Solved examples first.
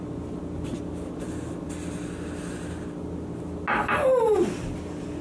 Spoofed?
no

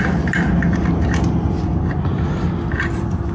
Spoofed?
no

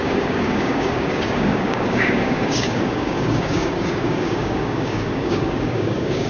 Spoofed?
yes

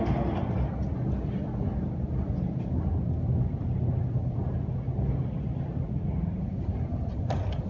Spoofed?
no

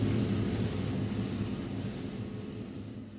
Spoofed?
no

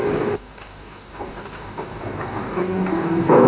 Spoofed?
yes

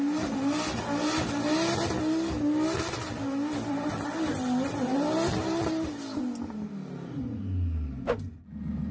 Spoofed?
no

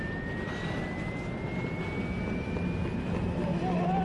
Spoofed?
no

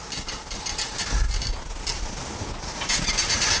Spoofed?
no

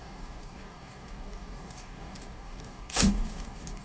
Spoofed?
yes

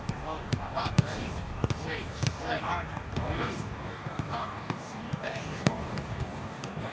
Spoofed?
yes